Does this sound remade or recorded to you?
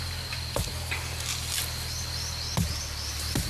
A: recorded